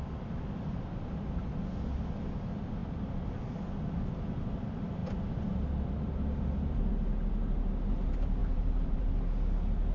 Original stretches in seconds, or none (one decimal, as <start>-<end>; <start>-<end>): 0.0-8.4; 9.1-9.9